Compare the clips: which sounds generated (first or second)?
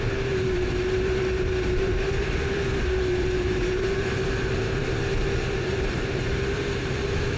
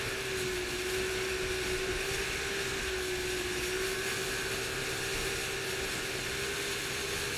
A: first